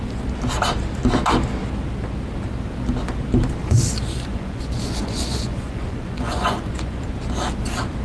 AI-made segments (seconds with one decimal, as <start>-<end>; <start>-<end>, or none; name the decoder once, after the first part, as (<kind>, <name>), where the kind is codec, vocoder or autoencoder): 3.6-7.0 (vocoder, Vocos)